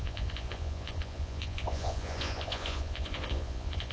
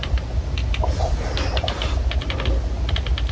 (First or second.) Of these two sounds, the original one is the second